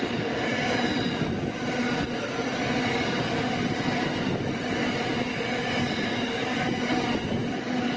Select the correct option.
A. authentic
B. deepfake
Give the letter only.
A